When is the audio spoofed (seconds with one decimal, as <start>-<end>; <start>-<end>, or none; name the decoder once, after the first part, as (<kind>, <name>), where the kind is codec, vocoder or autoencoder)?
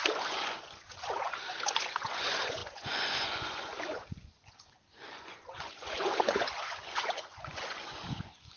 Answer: 0.0-8.6 (vocoder, Vocos)